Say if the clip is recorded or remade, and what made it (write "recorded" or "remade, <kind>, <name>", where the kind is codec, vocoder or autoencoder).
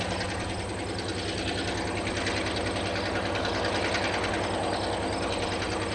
recorded